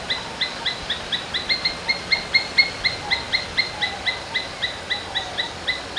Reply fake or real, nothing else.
real